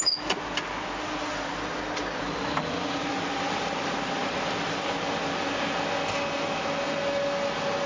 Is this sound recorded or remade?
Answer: recorded